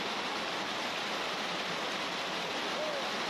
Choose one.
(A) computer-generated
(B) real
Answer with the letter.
B